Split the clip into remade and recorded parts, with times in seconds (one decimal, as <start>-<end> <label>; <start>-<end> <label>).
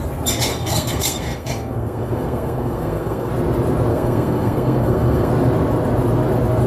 0.0-0.5 recorded; 0.5-3.3 remade; 3.3-3.9 recorded; 3.9-5.3 remade; 5.3-6.7 recorded